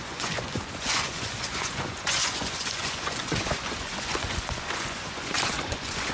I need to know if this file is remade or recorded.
remade